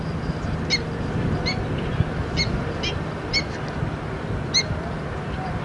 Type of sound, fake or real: real